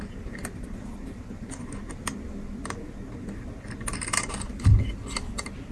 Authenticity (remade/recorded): recorded